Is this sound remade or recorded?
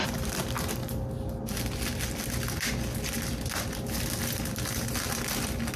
recorded